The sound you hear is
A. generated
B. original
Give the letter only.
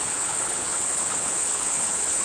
A